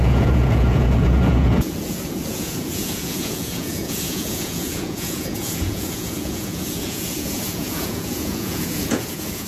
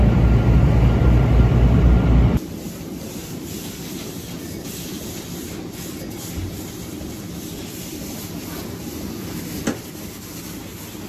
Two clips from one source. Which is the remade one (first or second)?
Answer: first